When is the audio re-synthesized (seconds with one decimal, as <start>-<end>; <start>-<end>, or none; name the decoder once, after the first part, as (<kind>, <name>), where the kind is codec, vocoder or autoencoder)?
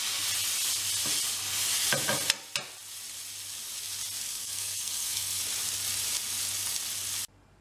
4.3-5.4 (codec, SNAC)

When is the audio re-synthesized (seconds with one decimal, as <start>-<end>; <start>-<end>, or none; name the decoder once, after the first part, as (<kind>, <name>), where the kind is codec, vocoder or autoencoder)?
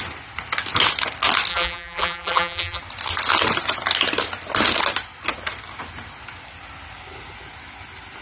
1.5-2.8 (vocoder, BigVGAN v2)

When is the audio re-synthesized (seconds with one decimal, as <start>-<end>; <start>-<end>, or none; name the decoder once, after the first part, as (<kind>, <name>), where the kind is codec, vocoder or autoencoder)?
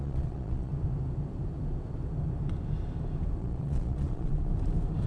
0.0-0.7 (vocoder, Vocos); 3.4-4.5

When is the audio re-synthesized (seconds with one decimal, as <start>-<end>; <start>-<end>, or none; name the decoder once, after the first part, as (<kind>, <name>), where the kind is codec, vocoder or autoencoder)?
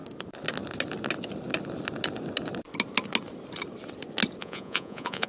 4.4-5.3 (vocoder, Vocos)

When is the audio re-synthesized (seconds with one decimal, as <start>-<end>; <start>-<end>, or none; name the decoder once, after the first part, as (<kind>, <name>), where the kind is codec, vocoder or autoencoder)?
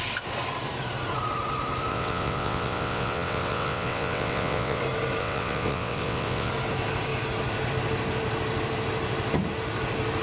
1.9-4.8 (vocoder, WaveNeXt); 5.2-6.5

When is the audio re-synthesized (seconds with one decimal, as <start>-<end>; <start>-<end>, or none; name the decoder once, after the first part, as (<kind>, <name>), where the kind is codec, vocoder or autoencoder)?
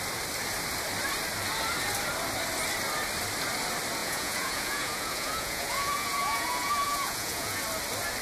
4.0-7.6 (vocoder, Vocos)